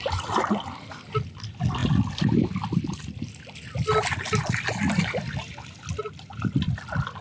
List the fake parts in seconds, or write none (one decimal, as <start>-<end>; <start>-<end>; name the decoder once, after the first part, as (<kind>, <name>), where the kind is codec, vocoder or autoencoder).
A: none